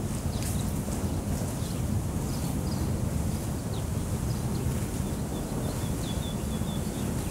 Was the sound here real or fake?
real